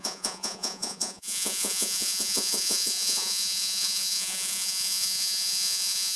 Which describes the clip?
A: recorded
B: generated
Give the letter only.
B